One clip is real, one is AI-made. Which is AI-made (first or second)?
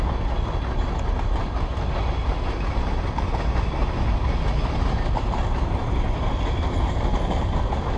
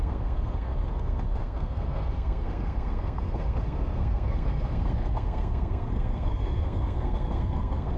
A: second